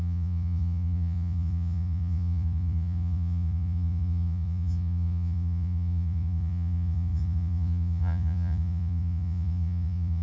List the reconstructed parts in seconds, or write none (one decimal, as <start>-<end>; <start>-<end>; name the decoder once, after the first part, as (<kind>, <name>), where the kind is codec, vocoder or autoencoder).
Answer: 0.0-10.2 (vocoder, Vocos)